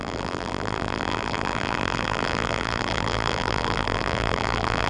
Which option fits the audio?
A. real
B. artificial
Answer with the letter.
B